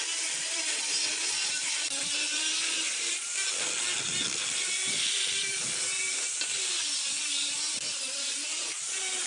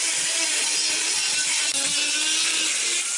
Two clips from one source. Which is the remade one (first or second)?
first